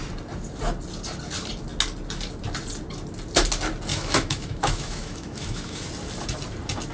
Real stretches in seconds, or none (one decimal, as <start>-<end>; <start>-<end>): 0.0-3.9; 5.9-6.9